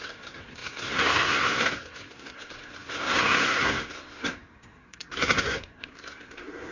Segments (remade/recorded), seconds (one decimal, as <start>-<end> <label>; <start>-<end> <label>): 0.0-6.7 remade